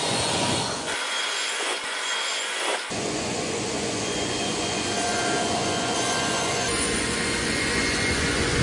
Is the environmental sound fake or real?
fake